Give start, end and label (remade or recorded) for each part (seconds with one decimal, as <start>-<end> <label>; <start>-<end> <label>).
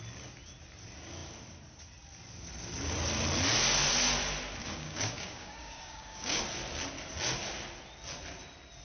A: 0.0-4.6 recorded; 4.6-6.4 remade; 6.4-8.8 recorded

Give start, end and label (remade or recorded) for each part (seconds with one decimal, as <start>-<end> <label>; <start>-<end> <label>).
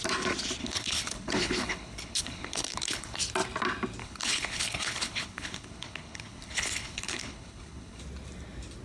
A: 0.0-0.6 recorded; 0.6-3.2 remade; 3.2-4.0 recorded; 4.0-8.0 remade; 8.0-8.8 recorded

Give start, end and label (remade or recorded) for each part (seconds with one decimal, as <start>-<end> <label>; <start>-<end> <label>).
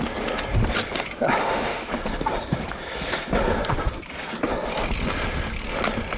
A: 0.0-1.4 recorded; 1.4-1.9 remade; 1.9-6.2 recorded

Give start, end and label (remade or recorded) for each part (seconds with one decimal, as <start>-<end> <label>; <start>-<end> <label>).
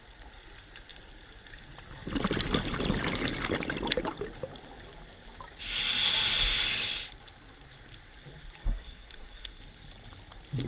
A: 0.0-8.6 recorded; 8.6-9.5 remade; 9.5-10.7 recorded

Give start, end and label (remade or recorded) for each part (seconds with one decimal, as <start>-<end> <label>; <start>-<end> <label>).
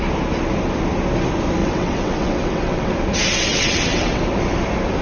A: 0.0-1.6 recorded; 1.6-2.9 remade; 2.9-3.5 recorded; 3.5-4.2 remade; 4.2-5.0 recorded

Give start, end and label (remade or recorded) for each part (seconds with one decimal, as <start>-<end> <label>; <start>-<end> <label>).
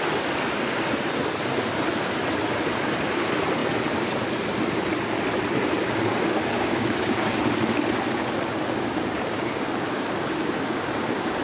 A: 0.0-5.8 recorded; 5.8-7.4 remade; 7.4-8.2 recorded; 8.2-11.4 remade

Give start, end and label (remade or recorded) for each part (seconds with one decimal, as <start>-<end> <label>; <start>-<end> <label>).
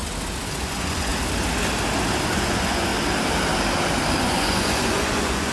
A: 0.0-0.5 recorded; 0.5-1.1 remade; 1.1-2.2 recorded; 2.2-2.9 remade; 2.9-4.2 recorded; 4.2-5.5 remade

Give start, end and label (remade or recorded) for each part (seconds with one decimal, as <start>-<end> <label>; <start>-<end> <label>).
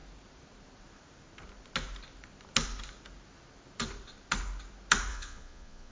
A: 0.0-5.1 recorded; 5.1-5.9 remade